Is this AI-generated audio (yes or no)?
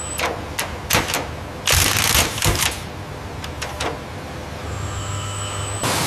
no